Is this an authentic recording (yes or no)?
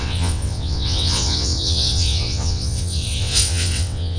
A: no